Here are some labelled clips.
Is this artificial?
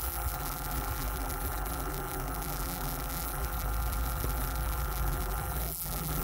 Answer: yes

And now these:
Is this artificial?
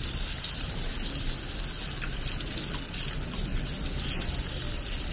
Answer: no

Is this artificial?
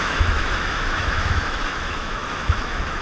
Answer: yes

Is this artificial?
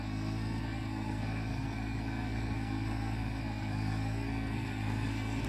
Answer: yes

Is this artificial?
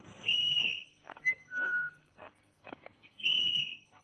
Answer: yes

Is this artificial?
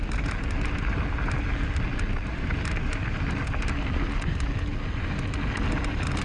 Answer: no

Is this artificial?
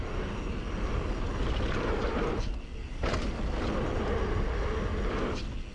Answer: no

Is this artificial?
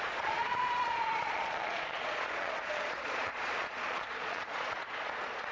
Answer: yes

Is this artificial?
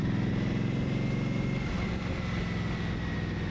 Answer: no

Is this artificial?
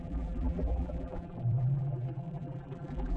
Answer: yes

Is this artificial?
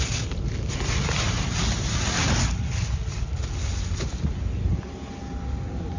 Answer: no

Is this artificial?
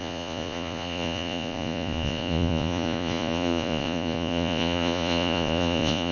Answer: yes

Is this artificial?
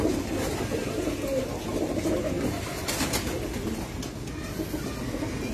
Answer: no